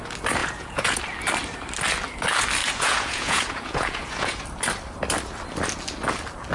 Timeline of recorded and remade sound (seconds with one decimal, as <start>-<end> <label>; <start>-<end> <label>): 0.0-0.4 recorded; 0.4-1.0 remade; 1.0-2.6 recorded; 2.6-4.4 remade; 4.4-6.5 recorded